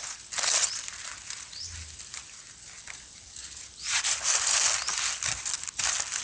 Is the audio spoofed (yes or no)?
no